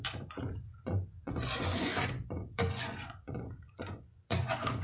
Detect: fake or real fake